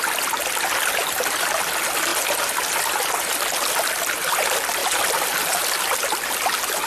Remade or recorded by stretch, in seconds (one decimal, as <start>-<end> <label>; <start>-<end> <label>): 0.0-4.8 recorded; 4.8-6.3 remade; 6.3-6.9 recorded